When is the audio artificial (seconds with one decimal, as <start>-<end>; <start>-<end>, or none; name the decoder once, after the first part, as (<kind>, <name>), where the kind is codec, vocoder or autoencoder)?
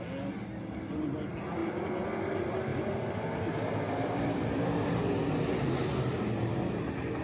2.7-4.9 (vocoder, BigVGAN v2)